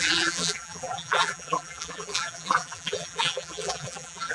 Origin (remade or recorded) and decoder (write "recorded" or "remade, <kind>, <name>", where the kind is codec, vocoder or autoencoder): remade, vocoder, BigVGAN v2